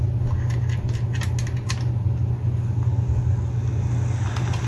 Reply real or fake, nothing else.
real